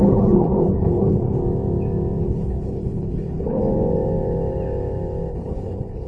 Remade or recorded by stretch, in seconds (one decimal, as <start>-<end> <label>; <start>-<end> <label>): 0.0-1.4 remade; 1.4-2.2 recorded; 2.2-3.6 remade; 3.6-5.3 recorded; 5.3-6.1 remade